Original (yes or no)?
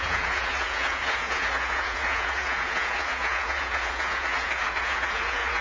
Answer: no